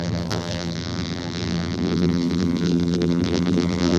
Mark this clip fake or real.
fake